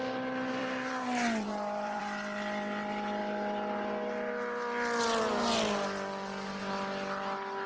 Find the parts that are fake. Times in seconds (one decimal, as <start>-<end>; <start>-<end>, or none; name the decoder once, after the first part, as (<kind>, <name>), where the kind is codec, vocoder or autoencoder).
0.6-2.0 (vocoder, BigVGAN v2)

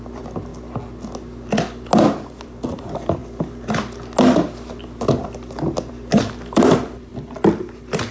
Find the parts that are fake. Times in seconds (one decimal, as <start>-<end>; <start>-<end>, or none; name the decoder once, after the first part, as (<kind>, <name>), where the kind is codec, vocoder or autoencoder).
0.0-0.5 (vocoder, BigVGAN v2); 2.4-3.2; 5.9-7.1